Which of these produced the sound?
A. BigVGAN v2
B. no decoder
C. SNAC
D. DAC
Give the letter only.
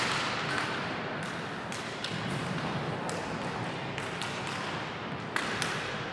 B